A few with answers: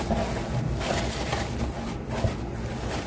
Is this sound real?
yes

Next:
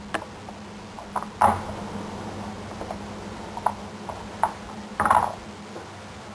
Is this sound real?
yes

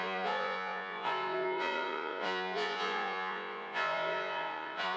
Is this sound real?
no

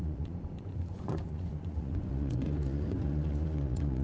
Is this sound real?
no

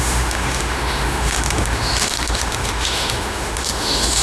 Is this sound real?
no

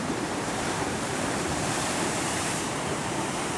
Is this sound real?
no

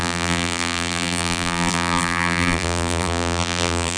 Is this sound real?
no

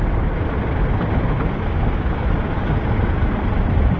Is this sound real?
yes